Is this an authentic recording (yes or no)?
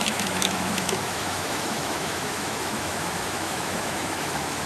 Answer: no